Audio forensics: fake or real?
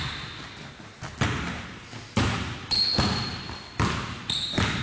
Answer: real